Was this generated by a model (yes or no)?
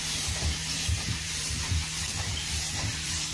yes